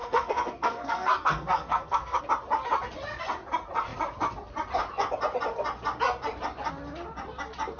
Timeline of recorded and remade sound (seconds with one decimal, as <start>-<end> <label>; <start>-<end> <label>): 0.0-2.2 remade; 2.2-7.8 recorded